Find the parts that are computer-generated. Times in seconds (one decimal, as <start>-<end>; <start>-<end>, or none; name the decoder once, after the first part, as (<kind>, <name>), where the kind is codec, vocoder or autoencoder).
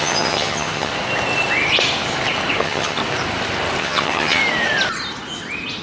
0.0-0.9 (vocoder, HiFi-GAN); 2.6-3.0; 3.8-4.4